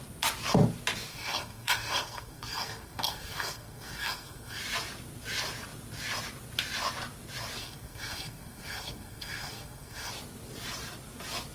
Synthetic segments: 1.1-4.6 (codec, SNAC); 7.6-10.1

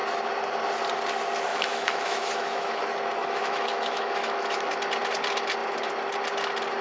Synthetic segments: 1.5-2.8 (autoencoder, DAC-VAE); 3.2-4.7

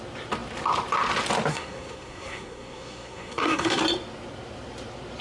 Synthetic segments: 1.5-3.8 (codec, SNAC)

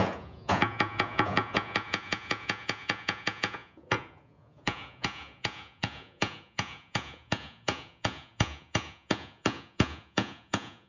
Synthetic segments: 0.0-10.9 (vocoder, Vocos)